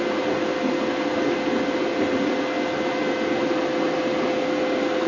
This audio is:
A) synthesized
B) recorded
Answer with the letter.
B